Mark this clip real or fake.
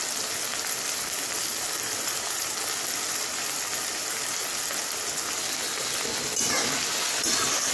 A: real